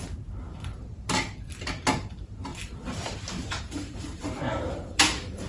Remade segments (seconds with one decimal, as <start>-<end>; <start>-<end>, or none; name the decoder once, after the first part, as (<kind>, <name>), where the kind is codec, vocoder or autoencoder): 0.0-0.8 (vocoder, BigVGAN v2); 2.0-2.5; 3.6-5.5